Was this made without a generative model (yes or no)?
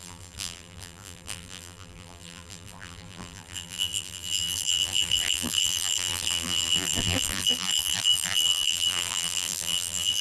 no